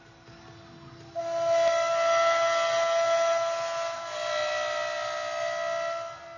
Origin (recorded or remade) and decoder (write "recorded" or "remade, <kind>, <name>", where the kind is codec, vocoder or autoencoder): recorded